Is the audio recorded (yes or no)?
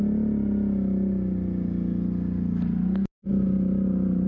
yes